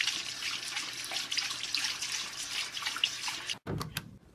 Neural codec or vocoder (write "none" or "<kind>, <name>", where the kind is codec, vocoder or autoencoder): none